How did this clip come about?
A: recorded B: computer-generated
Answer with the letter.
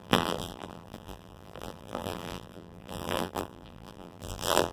B